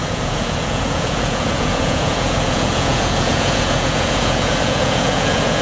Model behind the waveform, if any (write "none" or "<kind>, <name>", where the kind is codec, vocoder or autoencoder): vocoder, Vocos